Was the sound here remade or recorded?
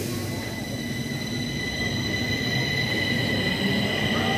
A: recorded